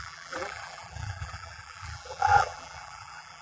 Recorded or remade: remade